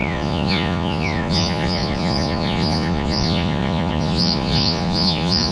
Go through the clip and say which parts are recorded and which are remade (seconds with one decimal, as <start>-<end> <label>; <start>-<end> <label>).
0.0-5.5 remade